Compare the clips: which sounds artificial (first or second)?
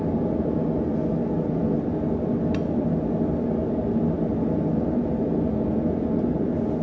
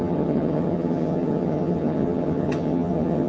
second